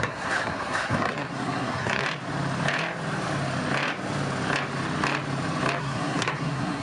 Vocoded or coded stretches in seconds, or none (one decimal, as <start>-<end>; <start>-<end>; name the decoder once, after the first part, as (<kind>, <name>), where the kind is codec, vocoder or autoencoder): 0.0-2.0 (codec, SNAC); 5.8-6.8